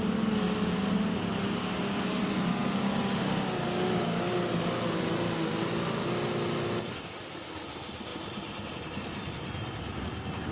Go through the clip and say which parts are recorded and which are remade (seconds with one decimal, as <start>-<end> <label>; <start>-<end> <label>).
0.0-10.5 recorded